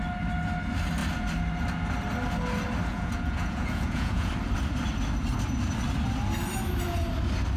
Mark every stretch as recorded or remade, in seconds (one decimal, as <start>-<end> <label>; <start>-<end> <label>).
0.0-2.9 recorded; 2.9-4.3 remade; 4.3-7.6 recorded